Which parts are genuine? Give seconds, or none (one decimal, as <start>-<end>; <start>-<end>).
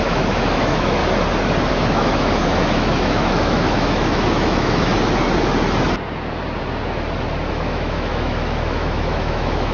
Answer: 1.0-1.7; 4.9-7.5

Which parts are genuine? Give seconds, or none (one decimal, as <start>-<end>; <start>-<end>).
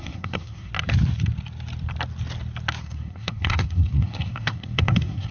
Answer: 0.7-2.8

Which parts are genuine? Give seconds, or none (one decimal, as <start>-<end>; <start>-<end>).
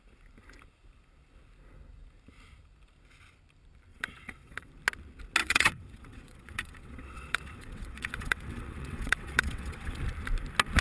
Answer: 0.0-3.9; 4.7-5.4; 10.0-10.8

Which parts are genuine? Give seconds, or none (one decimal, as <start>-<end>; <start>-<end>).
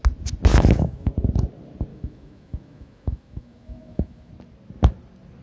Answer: 0.0-0.5; 1.1-1.9; 4.3-5.4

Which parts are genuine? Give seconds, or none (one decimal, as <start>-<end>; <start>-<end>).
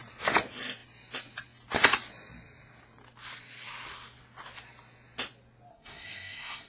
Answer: 0.0-5.7